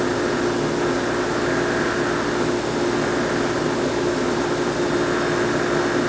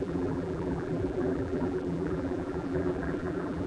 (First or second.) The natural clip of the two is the first